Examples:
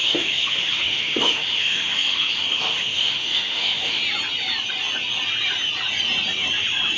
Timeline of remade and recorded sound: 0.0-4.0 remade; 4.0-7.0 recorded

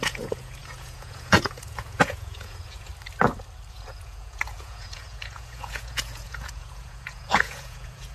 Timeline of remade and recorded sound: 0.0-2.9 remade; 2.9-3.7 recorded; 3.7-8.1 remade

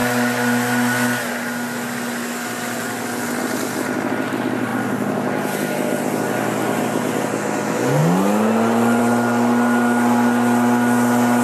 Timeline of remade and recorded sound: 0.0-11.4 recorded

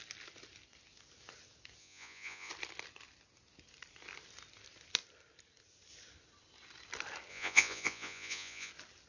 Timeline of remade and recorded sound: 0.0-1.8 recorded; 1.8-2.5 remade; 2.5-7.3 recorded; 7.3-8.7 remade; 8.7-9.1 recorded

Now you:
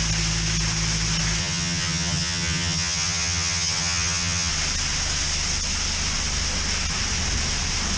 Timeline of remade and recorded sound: 0.0-1.4 recorded; 1.4-4.5 remade; 4.5-8.0 recorded

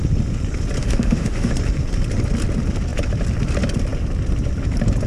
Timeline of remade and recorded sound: 0.0-0.8 recorded; 0.8-1.5 remade; 1.5-5.1 recorded

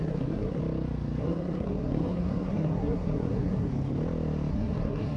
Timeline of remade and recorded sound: 0.0-0.6 remade; 0.6-1.2 recorded; 1.2-3.7 remade; 3.7-4.5 recorded; 4.5-5.2 remade